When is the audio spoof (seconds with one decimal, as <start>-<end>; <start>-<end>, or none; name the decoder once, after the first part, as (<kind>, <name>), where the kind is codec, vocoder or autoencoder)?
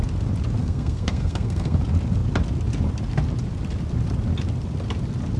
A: 0.6-1.8 (codec, SNAC)